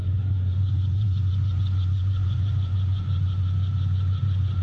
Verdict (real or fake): fake